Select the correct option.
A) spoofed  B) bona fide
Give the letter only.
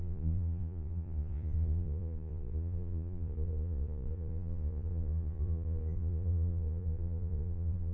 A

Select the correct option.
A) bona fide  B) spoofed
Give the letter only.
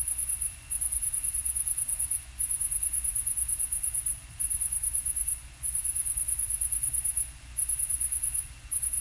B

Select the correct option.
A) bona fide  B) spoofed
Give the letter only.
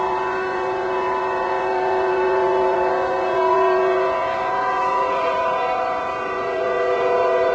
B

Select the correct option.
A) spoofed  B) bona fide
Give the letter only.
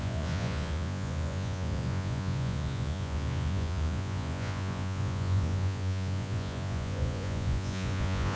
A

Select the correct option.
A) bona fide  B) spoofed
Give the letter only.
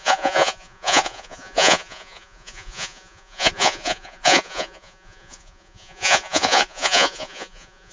B